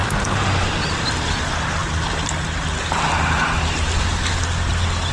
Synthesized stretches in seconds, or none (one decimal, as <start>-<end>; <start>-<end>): none